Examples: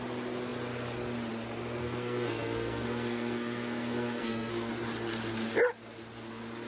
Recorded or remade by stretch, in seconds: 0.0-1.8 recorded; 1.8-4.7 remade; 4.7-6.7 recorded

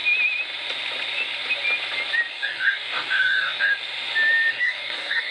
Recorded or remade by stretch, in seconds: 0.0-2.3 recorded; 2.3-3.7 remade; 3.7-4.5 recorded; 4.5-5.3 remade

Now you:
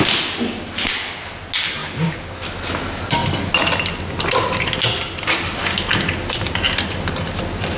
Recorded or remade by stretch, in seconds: 0.0-7.8 recorded

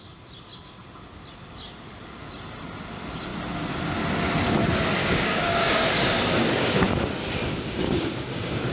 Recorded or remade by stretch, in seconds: 0.0-5.0 recorded; 5.0-7.1 remade; 7.1-7.5 recorded; 7.5-8.7 remade

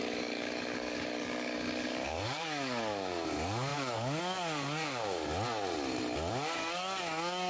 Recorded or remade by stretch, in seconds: 0.0-5.3 remade; 5.3-6.3 recorded; 6.3-7.5 remade

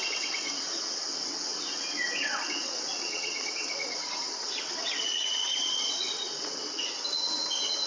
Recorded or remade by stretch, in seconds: 0.0-7.9 remade

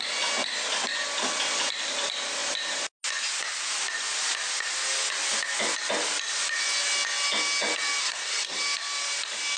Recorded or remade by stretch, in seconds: 0.0-8.0 recorded; 8.0-8.6 remade; 8.6-9.6 recorded

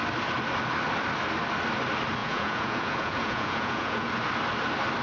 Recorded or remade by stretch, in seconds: 0.0-2.2 recorded; 2.2-4.1 remade; 4.1-5.0 recorded